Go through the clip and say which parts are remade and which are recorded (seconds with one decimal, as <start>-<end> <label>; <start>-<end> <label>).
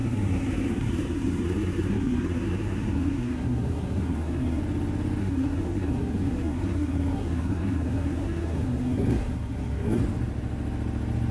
0.0-4.6 remade; 4.6-5.2 recorded; 5.2-10.0 remade; 10.0-11.3 recorded